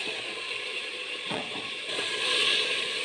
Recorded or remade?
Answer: remade